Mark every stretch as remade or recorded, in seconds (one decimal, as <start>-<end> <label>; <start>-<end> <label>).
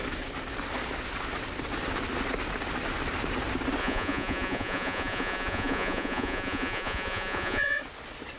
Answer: 0.0-3.8 recorded; 3.8-7.8 remade; 7.8-8.4 recorded